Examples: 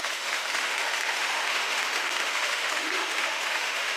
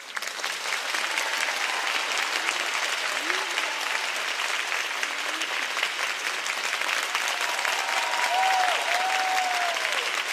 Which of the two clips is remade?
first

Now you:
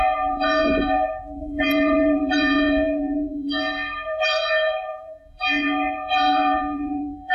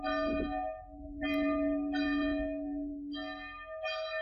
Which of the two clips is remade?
first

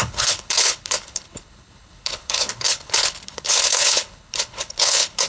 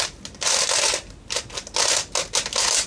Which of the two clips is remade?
first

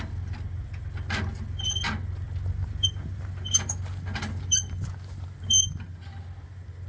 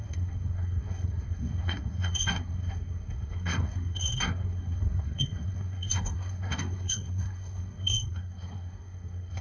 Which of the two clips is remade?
second